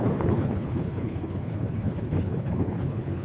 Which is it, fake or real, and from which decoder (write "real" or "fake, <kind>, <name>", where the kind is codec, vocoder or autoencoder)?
fake, codec, HILCodec